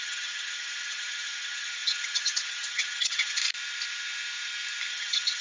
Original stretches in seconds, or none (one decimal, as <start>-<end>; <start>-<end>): 3.4-4.9